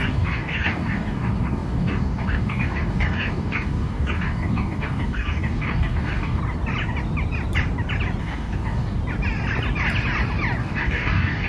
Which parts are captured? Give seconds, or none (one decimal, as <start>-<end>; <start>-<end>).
6.4-8.2; 9.0-10.6